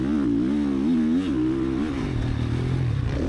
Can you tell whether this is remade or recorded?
recorded